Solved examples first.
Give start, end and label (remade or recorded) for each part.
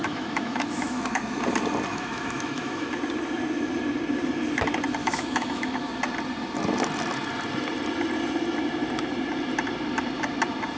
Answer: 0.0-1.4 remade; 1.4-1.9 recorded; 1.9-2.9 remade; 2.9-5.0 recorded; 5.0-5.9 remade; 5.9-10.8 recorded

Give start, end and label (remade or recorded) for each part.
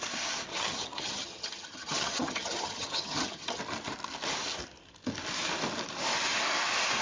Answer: 0.0-0.5 recorded; 0.5-3.6 remade; 3.6-7.0 recorded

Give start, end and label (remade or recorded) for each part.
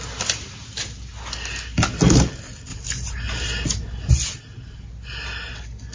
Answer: 0.0-5.9 recorded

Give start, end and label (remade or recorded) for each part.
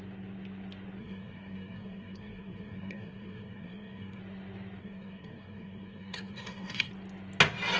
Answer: 0.0-1.0 recorded; 1.0-4.2 remade; 4.2-4.8 recorded; 4.8-6.9 remade; 6.9-7.8 recorded